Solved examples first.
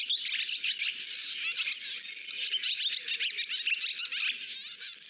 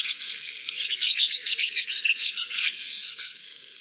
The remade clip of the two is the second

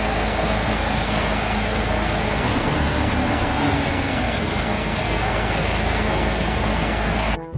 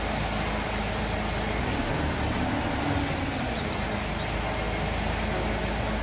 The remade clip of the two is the first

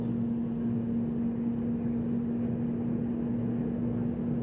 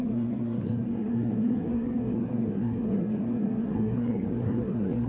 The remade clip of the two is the second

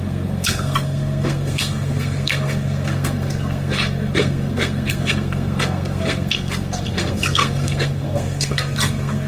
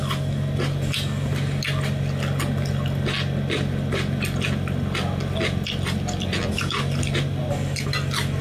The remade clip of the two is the first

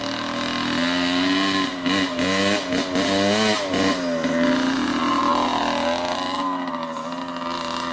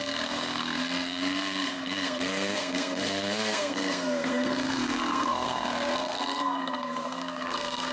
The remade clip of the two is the second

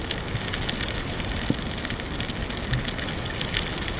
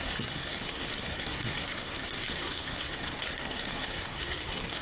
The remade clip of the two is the second